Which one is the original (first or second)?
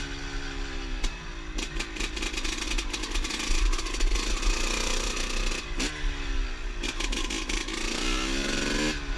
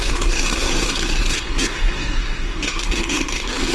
first